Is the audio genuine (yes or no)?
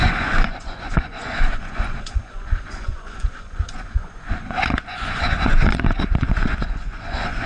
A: no